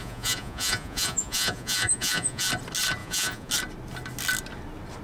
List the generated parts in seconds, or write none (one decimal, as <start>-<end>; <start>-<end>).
0.0-2.5; 3.0-3.5